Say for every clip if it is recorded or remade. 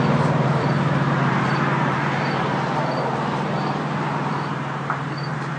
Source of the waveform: remade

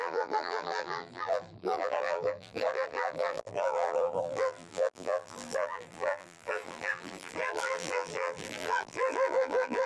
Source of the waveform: remade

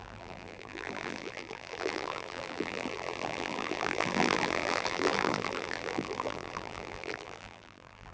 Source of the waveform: remade